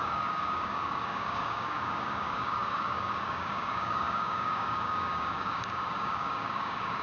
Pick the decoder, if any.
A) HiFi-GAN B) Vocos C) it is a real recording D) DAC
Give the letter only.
D